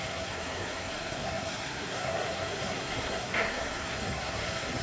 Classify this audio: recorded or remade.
remade